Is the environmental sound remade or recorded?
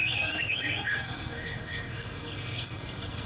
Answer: remade